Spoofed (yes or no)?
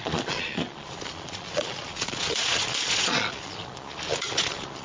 yes